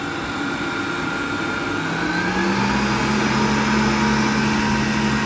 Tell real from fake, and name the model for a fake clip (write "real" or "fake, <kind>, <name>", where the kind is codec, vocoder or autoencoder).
real